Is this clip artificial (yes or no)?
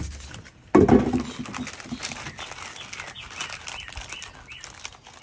no